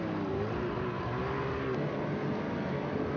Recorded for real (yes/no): yes